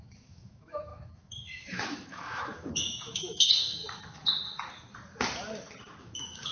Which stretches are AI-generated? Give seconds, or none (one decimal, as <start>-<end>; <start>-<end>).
0.0-3.8; 6.0-6.5